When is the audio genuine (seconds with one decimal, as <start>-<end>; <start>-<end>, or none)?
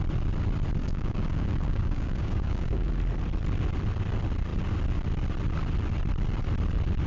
0.0-0.8; 2.9-7.1